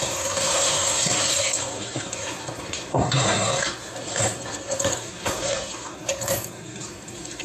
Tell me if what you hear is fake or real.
fake